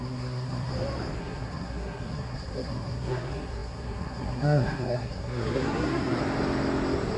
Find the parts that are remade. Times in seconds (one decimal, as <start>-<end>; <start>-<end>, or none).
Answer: 0.0-0.7; 1.2-6.2